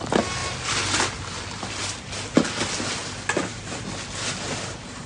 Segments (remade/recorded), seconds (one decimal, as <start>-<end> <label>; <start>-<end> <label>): 0.0-5.1 recorded